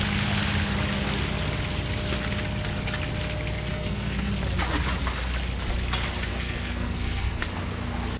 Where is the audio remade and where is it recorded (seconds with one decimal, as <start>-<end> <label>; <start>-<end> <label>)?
0.0-3.7 recorded; 3.7-4.3 remade; 4.3-6.3 recorded; 6.3-7.4 remade; 7.4-8.2 recorded